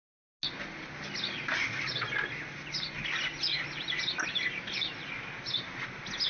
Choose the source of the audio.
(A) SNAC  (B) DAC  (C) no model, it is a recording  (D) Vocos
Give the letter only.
C